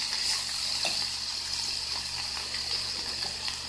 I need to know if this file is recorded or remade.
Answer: recorded